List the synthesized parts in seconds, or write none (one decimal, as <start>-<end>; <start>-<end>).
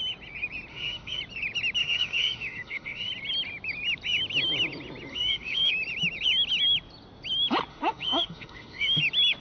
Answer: 0.7-1.2; 1.8-3.1; 5.1-5.7; 7.7-9.0